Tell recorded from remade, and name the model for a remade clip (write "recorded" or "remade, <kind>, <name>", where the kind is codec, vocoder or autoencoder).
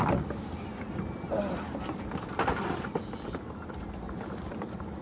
recorded